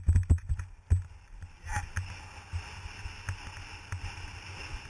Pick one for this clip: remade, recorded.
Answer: recorded